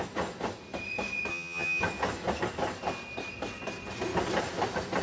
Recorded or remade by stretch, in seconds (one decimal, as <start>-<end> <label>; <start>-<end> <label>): 0.0-1.3 recorded; 1.3-1.8 remade; 1.8-5.0 recorded